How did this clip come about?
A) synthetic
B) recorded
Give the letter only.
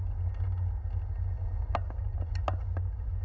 B